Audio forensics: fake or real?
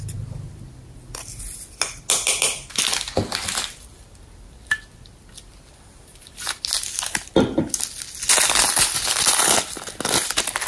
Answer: real